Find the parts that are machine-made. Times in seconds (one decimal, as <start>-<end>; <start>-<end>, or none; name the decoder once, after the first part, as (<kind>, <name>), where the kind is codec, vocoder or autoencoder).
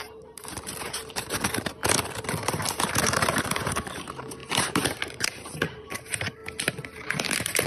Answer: 0.0-1.8 (vocoder, BigVGAN v2); 2.8-6.4; 7.3-7.7